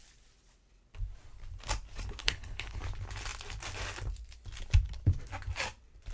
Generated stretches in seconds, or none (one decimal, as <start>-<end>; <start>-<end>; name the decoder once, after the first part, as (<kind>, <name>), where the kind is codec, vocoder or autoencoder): 2.2-2.8 (codec, HILCodec)